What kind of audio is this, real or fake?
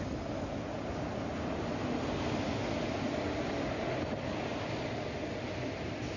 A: real